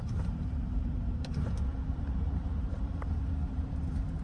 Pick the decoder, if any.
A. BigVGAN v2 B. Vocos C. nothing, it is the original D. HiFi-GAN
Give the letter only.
A